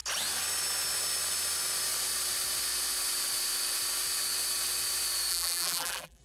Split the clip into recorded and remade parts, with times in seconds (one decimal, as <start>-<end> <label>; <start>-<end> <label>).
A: 0.0-5.3 recorded; 5.3-6.2 remade